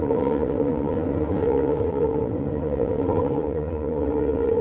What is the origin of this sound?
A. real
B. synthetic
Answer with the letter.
B